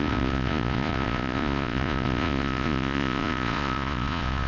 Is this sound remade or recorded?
remade